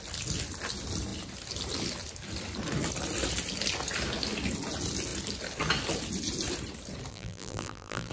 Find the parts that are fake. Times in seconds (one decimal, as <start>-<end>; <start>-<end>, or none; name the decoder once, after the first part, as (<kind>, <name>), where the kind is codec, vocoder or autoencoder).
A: 7.1-8.1 (vocoder, BigVGAN v2)